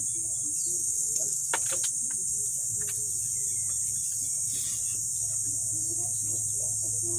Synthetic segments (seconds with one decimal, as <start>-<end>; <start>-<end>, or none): 0.8-1.5